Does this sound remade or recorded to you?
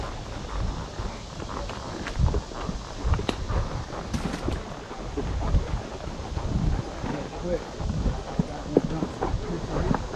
recorded